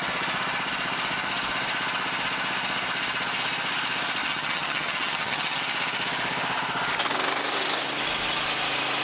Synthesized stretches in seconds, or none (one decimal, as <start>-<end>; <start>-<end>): 4.2-5.6